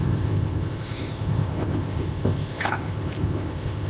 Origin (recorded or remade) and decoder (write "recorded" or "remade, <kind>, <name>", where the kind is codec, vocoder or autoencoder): remade, codec, ZipCodec